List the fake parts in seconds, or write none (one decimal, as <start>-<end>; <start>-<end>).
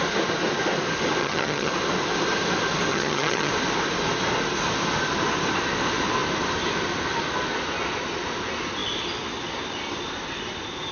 1.2-1.7; 2.9-3.5